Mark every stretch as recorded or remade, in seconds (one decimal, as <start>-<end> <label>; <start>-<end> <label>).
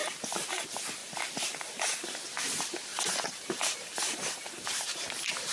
0.0-0.6 remade; 0.6-1.0 recorded; 1.0-2.1 remade; 2.1-2.9 recorded; 2.9-5.0 remade; 5.0-5.5 recorded